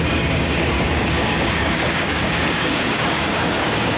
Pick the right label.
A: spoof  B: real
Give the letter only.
A